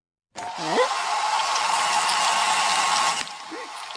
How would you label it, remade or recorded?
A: recorded